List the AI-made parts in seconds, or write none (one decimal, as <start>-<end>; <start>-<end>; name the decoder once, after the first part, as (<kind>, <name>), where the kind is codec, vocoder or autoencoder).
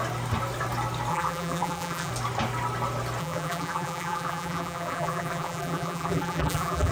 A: 1.1-2.1 (vocoder, BigVGAN v2); 3.2-6.9